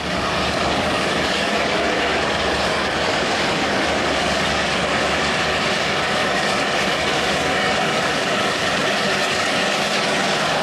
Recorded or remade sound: remade